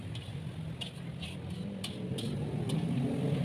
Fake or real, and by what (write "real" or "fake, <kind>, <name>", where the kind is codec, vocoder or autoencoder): real